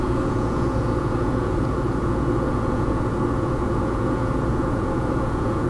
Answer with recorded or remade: remade